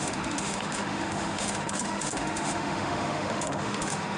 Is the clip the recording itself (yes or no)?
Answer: no